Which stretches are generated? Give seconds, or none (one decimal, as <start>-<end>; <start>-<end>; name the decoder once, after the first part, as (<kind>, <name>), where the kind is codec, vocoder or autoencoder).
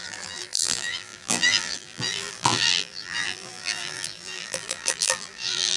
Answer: 0.0-5.8 (vocoder, BigVGAN v2)